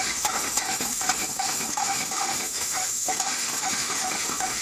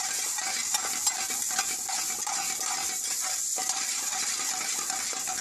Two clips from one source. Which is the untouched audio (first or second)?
second